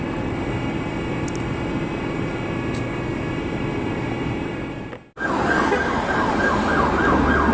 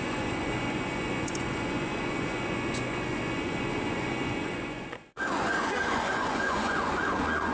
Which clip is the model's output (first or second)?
second